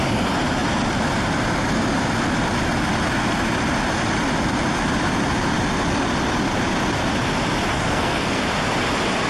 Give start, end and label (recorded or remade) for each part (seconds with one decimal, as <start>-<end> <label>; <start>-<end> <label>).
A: 0.0-7.7 recorded; 7.7-8.4 remade; 8.4-9.3 recorded